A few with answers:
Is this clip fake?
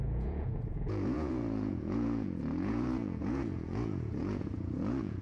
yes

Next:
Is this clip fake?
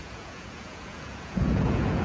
yes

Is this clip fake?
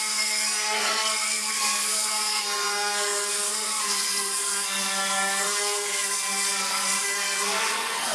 yes